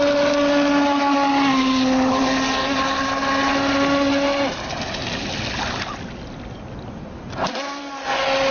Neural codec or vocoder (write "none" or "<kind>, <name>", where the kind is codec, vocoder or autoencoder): none